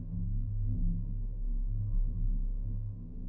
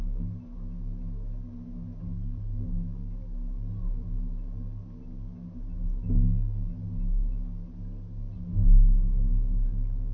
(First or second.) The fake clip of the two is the first